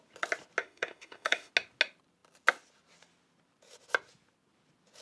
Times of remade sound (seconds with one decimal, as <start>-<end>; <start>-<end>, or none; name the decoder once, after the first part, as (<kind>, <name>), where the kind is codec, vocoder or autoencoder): 0.6-1.5 (autoencoder, DAC-VAE)